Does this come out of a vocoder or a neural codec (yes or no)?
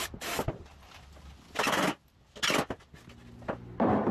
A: no